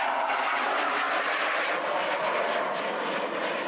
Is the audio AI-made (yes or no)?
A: no